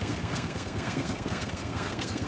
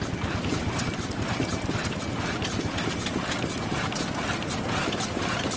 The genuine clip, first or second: second